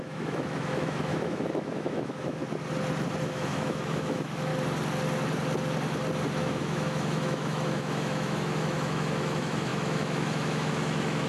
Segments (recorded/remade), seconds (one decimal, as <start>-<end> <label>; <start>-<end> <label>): 0.0-2.4 remade; 2.4-3.2 recorded; 3.2-4.5 remade; 4.5-6.4 recorded; 6.4-11.3 remade